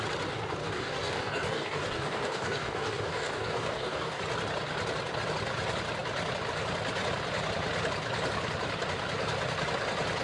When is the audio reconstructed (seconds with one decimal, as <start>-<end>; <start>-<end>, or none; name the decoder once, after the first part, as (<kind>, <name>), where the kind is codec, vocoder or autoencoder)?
0.6-4.2 (codec, DAC)